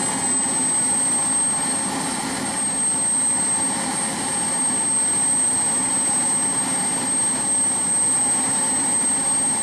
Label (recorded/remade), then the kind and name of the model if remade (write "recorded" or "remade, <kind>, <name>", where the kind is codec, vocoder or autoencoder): recorded